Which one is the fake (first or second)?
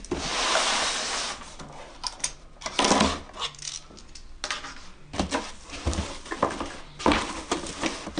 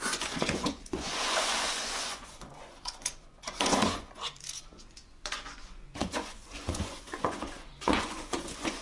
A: second